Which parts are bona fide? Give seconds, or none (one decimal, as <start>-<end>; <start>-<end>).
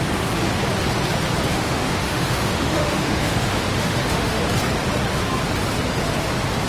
0.0-1.5; 4.4-6.7